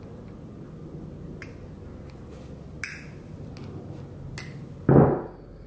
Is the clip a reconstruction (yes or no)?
no